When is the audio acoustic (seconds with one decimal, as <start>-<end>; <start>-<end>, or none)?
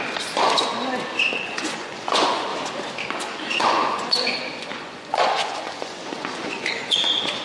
0.7-1.4; 2.5-3.1